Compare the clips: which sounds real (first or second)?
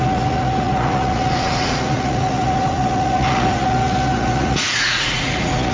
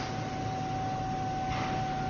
second